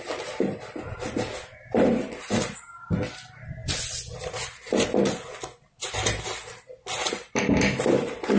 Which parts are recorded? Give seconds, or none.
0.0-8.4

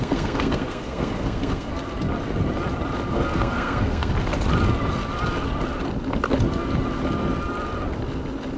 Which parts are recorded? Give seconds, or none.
1.7-3.1; 4.1-8.6

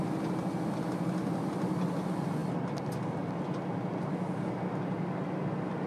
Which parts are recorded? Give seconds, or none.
0.0-5.9

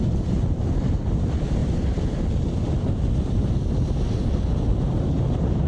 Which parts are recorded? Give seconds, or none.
0.0-5.7

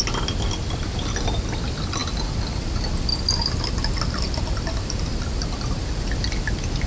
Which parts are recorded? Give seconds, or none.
0.0-6.9

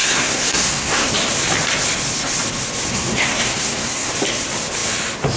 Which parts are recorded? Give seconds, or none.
1.1-2.9; 4.1-5.4